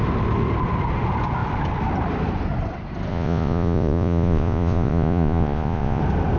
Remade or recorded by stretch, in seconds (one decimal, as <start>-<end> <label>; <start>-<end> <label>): 0.0-3.1 recorded; 3.1-6.0 remade; 6.0-6.4 recorded